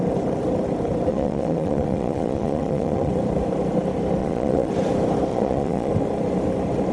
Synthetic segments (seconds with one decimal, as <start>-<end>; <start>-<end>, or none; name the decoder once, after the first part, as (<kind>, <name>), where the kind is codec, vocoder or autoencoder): 1.1-3.1 (vocoder, Vocos); 4.2-4.7; 5.3-5.9